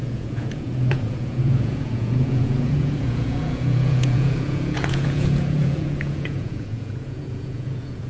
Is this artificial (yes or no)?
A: yes